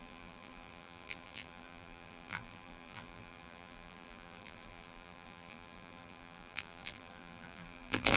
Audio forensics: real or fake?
fake